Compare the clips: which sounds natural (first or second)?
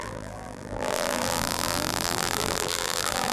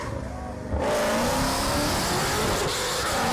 second